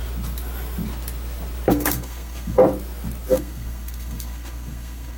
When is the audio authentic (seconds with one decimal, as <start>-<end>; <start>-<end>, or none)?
0.0-1.7; 2.6-3.3

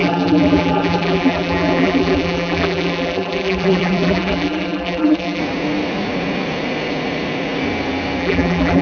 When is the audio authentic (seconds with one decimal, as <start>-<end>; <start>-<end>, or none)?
5.4-8.2

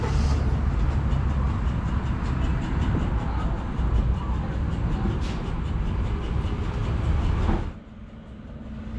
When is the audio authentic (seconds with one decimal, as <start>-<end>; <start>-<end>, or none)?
0.0-9.0